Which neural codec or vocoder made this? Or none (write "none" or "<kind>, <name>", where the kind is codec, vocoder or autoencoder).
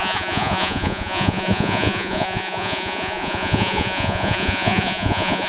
vocoder, Vocos